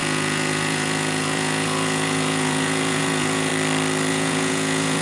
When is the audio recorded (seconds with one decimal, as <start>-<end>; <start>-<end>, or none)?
3.5-4.1